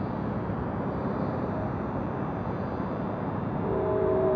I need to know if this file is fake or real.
fake